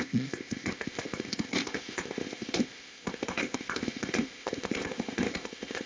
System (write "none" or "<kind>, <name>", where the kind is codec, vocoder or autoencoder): codec, ZipCodec